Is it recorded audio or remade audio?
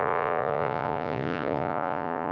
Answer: remade